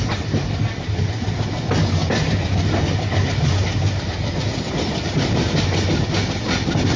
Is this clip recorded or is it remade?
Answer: recorded